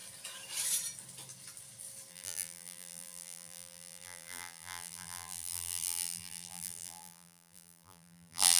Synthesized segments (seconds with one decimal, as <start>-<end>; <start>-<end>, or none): 2.1-8.6